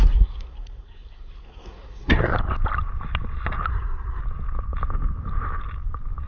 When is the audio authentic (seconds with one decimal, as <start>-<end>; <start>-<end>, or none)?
2.3-3.7; 4.2-6.3